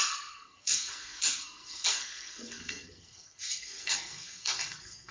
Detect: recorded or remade remade